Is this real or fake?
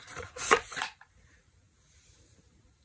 fake